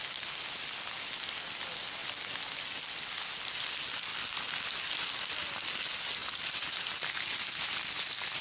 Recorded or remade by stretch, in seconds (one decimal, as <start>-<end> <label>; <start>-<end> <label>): 0.0-8.4 recorded